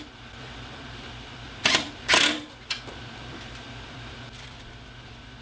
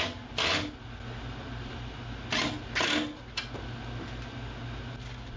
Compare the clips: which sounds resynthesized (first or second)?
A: first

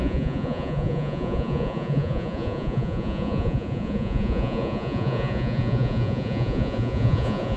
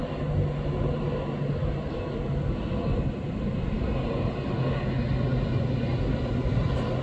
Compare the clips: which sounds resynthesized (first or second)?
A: first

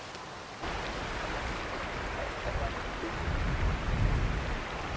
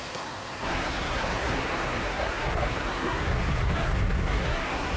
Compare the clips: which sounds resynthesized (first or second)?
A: second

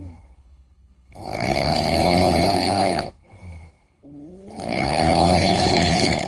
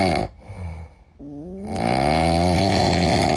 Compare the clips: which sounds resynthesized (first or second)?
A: first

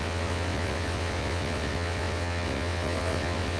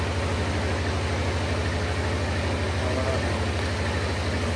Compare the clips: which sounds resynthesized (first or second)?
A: first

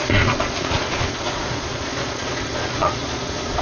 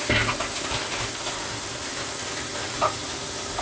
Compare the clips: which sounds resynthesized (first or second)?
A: first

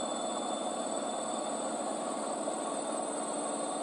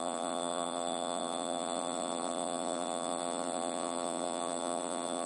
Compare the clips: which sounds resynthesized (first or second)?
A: second